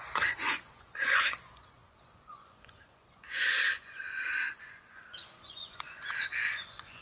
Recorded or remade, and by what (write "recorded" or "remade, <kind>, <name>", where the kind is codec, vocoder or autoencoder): remade, vocoder, Vocos